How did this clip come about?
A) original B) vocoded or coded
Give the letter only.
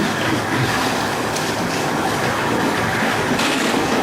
B